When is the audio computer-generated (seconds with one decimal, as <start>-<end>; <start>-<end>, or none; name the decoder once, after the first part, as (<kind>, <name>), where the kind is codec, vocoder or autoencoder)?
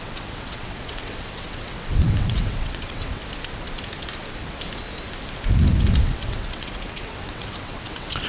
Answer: 0.0-3.2 (vocoder, WaveNeXt); 6.0-8.3